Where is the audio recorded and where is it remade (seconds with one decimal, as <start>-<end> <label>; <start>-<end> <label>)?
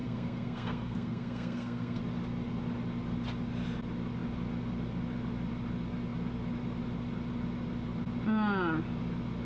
0.0-2.0 remade; 2.0-9.4 recorded